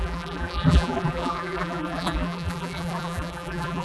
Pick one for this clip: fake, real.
fake